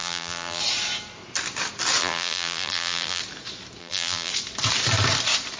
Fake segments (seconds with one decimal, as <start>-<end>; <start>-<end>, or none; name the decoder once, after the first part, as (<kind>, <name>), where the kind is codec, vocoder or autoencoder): 0.0-0.6 (vocoder, BigVGAN v2); 2.0-3.2; 3.8-4.3